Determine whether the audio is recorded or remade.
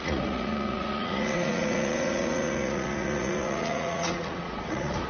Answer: remade